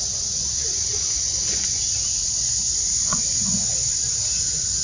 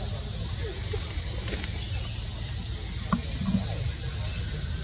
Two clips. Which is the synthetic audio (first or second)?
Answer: first